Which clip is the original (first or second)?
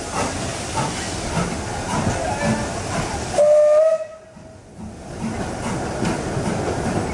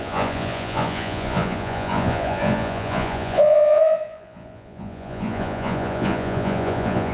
first